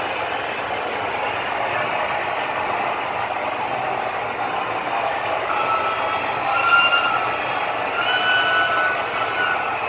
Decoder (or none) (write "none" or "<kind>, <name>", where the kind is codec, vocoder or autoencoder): none